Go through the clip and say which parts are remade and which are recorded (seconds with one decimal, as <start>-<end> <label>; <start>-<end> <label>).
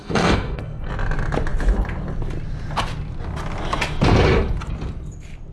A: 0.0-0.9 remade; 0.9-5.5 recorded